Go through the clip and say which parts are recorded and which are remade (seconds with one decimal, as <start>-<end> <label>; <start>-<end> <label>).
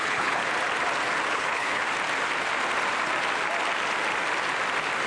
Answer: 0.0-0.4 remade; 0.4-1.3 recorded; 1.3-1.8 remade; 1.8-5.1 recorded